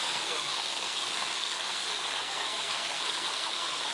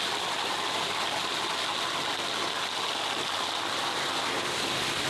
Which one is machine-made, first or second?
first